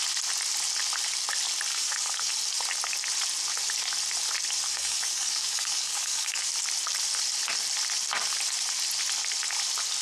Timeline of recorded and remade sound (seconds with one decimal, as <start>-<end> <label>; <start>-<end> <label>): 0.0-1.7 recorded; 1.7-2.3 remade; 2.3-4.7 recorded; 4.7-6.5 remade; 6.5-10.0 recorded